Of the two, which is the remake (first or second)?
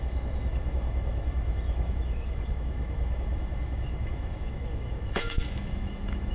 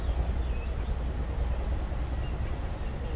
first